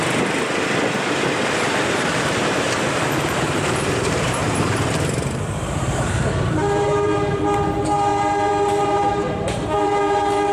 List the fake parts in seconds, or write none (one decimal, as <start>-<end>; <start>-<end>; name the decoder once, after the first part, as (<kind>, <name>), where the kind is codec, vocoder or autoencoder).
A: 1.1-10.5 (vocoder, BigVGAN v2)